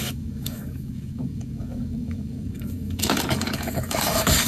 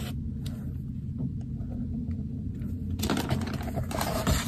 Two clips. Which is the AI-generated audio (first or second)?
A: first